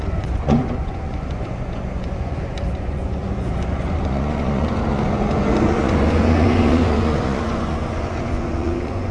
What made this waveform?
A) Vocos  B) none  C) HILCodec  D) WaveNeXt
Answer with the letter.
A